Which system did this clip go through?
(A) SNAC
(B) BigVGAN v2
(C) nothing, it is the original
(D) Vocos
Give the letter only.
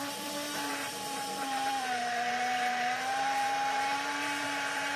B